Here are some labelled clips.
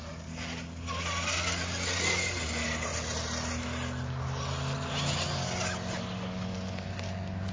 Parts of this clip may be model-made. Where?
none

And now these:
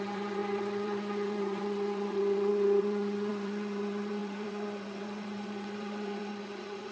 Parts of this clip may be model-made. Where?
0.0-6.9 (vocoder, WaveNeXt)

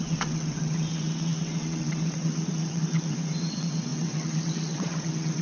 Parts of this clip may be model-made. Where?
0.0-5.4 (vocoder, WaveNeXt)

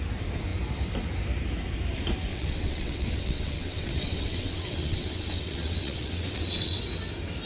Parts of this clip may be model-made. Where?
2.3-6.8 (vocoder, WaveNeXt)